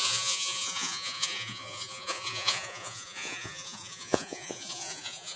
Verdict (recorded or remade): remade